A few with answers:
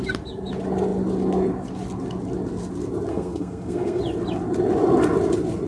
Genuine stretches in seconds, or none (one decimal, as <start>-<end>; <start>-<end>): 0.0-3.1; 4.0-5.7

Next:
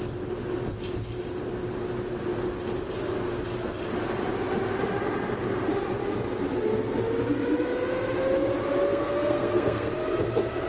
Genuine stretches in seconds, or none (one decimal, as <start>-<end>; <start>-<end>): 0.0-8.9; 9.9-10.7

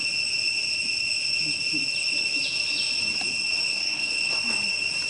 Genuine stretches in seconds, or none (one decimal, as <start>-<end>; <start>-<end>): 0.0-3.7; 4.3-5.1

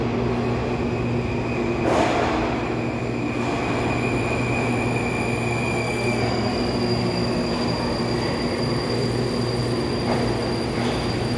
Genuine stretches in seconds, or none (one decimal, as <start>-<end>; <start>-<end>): 0.0-5.8; 6.5-11.4

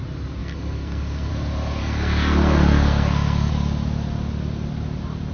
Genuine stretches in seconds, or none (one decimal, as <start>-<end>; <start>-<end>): 0.0-0.4; 1.3-1.8; 3.5-5.3

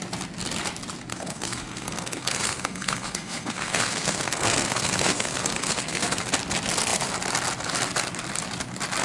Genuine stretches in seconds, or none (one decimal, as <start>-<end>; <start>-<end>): 0.0-1.1; 6.3-9.0